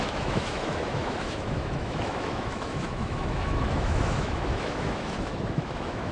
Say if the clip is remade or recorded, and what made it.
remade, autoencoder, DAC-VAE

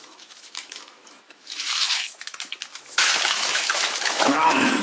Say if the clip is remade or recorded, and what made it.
remade, autoencoder, DAC-VAE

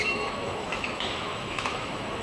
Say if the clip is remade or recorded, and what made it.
remade, autoencoder, DAC-VAE